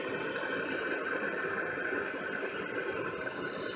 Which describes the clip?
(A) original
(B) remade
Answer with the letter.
A